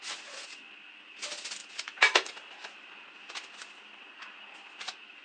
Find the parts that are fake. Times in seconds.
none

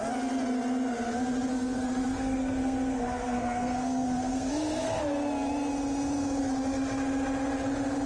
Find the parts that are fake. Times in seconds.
1.5-5.0 (codec, SNAC)

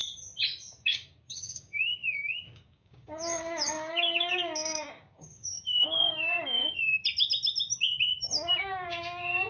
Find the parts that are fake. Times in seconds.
0.8-6.6 (codec, DAC); 8.6-9.5

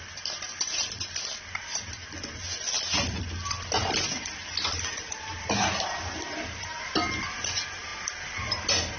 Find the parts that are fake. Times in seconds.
none

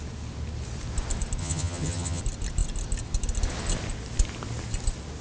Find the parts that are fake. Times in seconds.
1.4-2.2 (vocoder, HiFi-GAN)